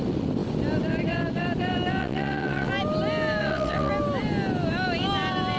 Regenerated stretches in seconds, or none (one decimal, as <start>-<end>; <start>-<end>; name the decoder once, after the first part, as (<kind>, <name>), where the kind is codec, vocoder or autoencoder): 2.0-2.7 (vocoder, WaveNeXt); 3.4-3.9